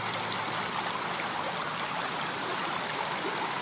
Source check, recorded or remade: recorded